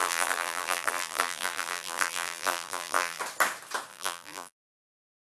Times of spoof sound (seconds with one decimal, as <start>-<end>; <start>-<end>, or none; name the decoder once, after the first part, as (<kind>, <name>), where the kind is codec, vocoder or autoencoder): 0.0-3.2 (vocoder, BigVGAN v2); 3.9-5.3